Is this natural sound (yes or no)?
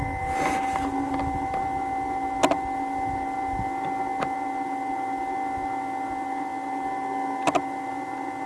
yes